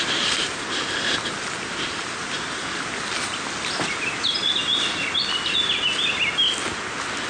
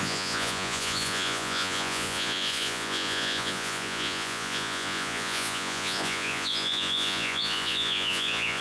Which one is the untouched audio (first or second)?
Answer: first